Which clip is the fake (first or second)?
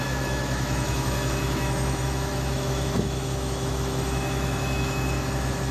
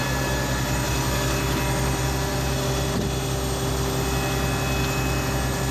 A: first